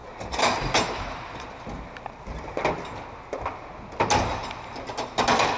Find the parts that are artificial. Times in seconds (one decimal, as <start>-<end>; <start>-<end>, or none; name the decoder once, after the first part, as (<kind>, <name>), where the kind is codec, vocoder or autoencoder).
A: none